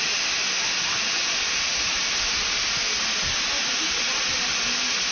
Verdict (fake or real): real